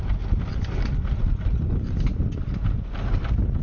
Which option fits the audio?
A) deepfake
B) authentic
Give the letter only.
B